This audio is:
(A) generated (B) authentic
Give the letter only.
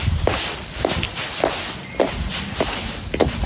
B